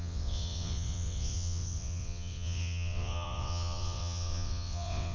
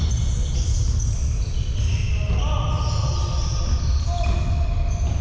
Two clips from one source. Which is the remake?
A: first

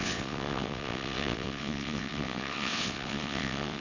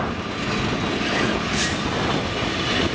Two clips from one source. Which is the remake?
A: first